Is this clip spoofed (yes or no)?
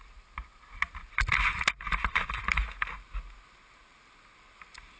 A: no